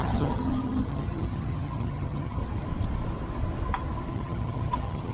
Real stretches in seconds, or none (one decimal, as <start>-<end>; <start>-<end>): 2.4-4.1